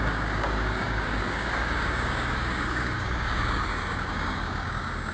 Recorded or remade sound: remade